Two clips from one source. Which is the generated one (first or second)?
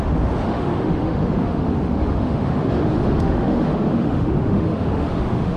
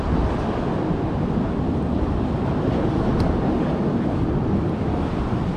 first